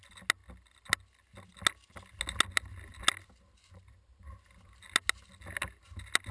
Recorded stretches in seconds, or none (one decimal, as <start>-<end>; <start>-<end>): 0.0-6.3